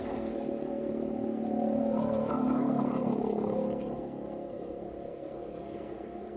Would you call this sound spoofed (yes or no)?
yes